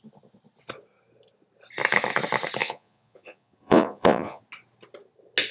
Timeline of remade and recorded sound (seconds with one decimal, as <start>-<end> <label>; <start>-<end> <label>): 0.0-2.6 recorded; 2.6-4.4 remade; 4.4-5.5 recorded

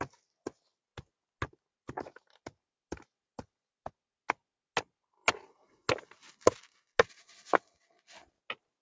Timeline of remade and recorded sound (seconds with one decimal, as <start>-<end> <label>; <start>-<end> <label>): 0.0-8.8 recorded